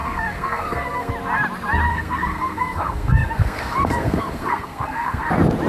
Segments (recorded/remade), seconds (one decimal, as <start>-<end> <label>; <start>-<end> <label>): 0.0-1.1 remade; 1.1-1.9 recorded; 1.9-5.3 remade; 5.3-5.7 recorded